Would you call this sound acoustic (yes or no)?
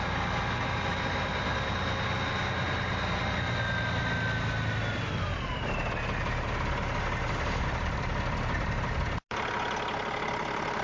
yes